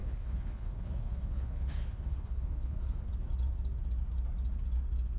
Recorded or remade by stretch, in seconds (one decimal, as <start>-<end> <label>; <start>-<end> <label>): 0.0-3.1 remade; 3.1-5.2 recorded